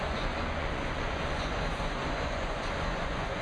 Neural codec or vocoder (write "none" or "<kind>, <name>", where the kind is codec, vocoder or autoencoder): vocoder, Vocos